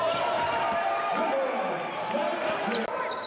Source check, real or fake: real